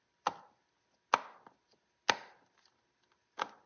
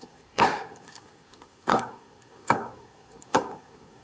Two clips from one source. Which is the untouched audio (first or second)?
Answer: first